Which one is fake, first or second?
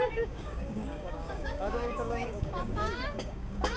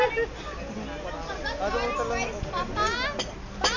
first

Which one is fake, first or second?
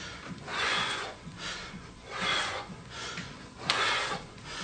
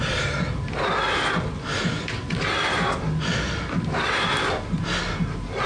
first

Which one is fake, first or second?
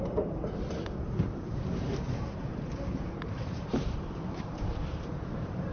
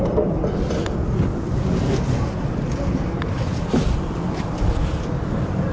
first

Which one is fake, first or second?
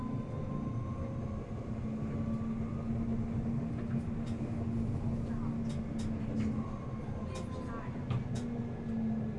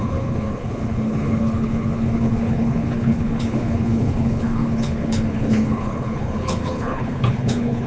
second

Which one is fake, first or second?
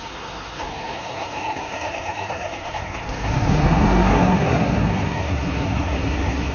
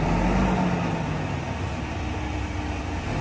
first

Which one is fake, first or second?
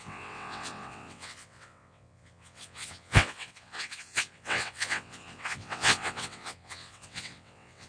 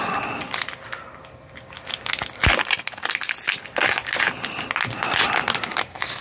first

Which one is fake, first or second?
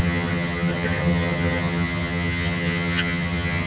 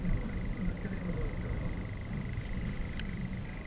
first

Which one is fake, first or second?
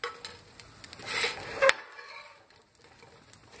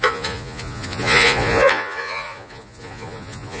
second